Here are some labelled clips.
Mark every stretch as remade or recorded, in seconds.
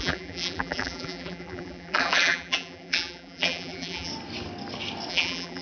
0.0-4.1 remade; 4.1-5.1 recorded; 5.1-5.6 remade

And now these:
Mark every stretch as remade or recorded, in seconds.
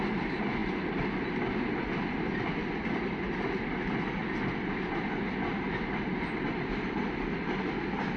0.0-8.2 recorded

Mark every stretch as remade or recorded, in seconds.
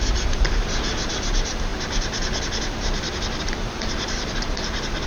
0.0-5.1 remade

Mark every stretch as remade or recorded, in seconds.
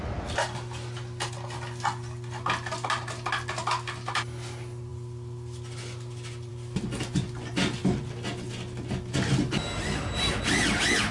0.0-11.1 recorded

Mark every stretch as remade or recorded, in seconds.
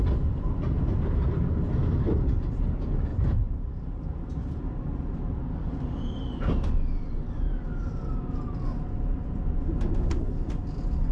0.0-3.1 recorded; 3.1-3.9 remade; 3.9-11.1 recorded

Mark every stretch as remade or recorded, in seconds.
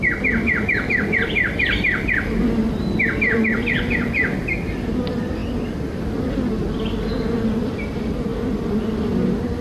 0.0-5.4 remade; 5.4-7.6 recorded; 7.6-9.6 remade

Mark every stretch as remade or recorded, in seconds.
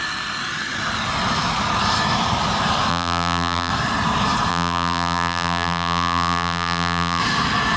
0.0-2.9 recorded; 2.9-3.7 remade; 3.7-4.5 recorded; 4.5-7.2 remade; 7.2-7.8 recorded